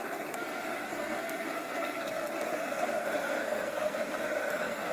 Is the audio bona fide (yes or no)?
no